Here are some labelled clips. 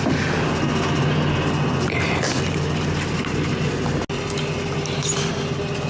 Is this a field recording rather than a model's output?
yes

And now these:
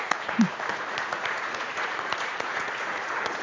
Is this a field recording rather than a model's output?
no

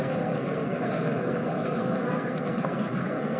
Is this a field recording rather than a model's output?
no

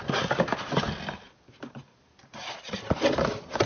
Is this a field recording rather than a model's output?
yes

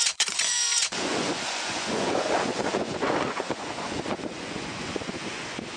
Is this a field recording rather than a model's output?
no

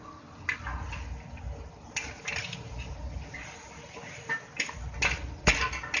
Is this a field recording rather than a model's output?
yes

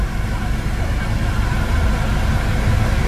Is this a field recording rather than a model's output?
yes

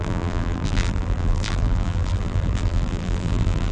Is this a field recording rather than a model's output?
no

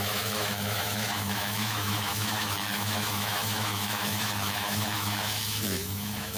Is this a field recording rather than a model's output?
no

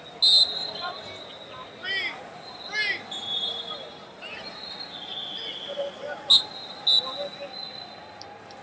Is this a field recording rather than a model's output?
yes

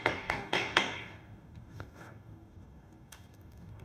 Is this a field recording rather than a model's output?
no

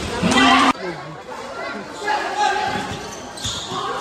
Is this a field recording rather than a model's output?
no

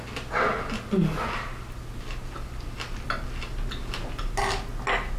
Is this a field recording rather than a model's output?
yes